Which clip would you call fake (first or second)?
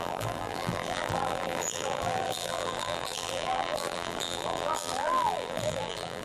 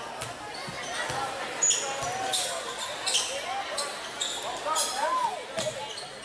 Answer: first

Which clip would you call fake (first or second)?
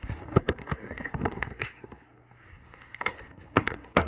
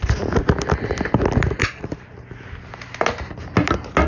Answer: first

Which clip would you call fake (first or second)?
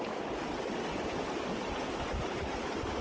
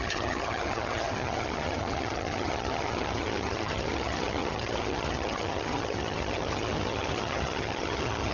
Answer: second